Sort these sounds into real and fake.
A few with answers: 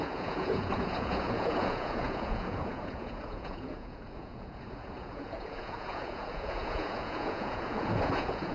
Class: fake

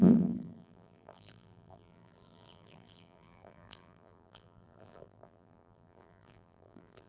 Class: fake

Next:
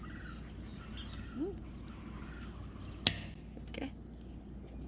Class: real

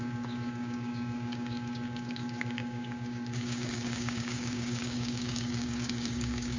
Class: fake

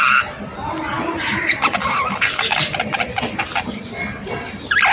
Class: real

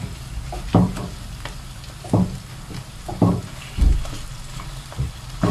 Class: real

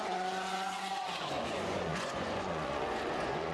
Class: fake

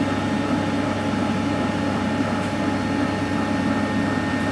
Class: real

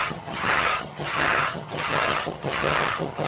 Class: fake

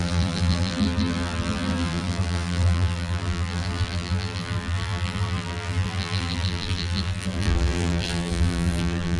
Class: fake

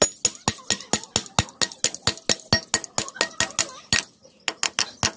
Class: real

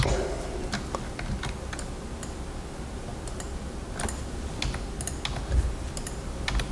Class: real